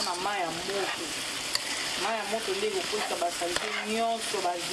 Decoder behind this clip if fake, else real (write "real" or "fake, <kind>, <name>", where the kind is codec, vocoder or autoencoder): real